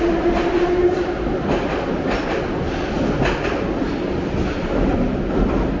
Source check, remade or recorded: recorded